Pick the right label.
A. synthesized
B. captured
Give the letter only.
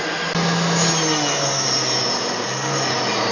B